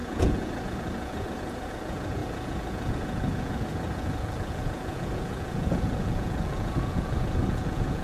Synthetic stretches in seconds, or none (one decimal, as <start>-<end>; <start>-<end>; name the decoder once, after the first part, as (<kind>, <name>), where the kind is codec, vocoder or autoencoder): 0.0-8.0 (vocoder, Vocos)

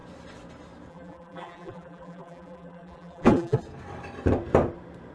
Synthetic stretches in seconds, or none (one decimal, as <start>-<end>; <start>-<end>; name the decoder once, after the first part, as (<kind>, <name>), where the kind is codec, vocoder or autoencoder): 0.9-3.6 (vocoder, BigVGAN v2)

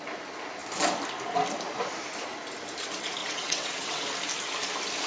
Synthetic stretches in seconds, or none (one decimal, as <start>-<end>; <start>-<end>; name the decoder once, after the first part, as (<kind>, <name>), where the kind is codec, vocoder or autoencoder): 3.2-4.0 (vocoder, WaveNeXt)

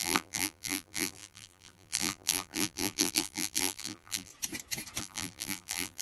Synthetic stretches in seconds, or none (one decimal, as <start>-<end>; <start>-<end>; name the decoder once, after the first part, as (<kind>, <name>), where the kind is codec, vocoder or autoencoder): 0.0-4.3 (vocoder, BigVGAN v2); 5.0-6.0

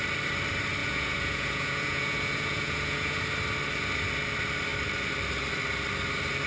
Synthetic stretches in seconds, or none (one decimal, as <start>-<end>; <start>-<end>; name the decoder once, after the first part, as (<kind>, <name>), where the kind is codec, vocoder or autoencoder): 0.8-3.2 (vocoder, Vocos)